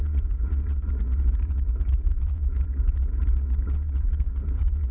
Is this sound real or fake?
fake